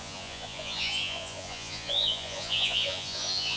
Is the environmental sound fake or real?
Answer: fake